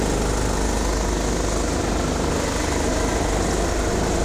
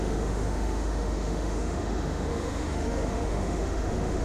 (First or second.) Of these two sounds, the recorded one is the first